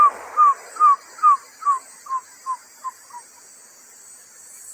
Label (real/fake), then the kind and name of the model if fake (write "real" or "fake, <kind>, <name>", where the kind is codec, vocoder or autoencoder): real